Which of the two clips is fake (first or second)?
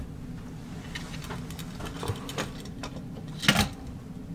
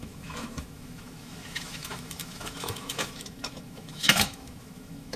second